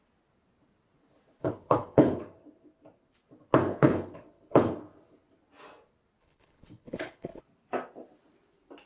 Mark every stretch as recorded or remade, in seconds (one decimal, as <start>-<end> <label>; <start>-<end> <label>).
0.0-1.4 recorded; 1.4-2.2 remade; 2.2-3.7 recorded; 3.7-4.7 remade; 4.7-6.2 recorded; 6.2-7.4 remade; 7.4-8.9 recorded